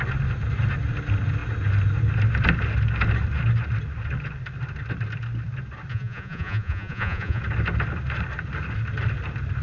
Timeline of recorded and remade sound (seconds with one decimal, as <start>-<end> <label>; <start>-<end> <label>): 0.0-5.9 recorded; 5.9-7.4 remade; 7.4-9.6 recorded